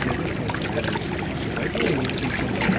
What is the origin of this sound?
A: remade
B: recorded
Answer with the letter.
B